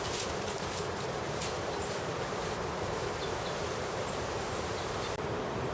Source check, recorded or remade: remade